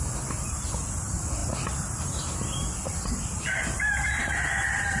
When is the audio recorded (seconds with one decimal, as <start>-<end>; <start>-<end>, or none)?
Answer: none